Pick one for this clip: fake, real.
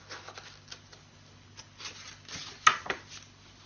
real